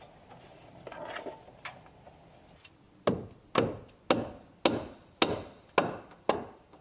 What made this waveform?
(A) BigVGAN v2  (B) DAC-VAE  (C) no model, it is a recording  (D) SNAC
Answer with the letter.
C